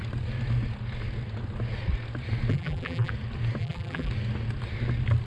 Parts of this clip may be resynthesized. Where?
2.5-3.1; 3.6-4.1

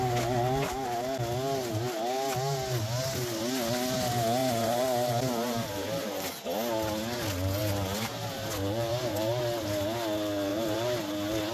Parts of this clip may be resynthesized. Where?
4.4-6.3; 7.6-9.4; 10.5-11.1

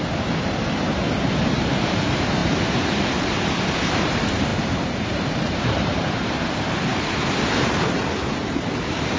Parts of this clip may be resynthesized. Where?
0.0-9.2

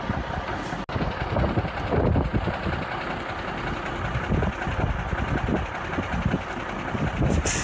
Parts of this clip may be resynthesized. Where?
none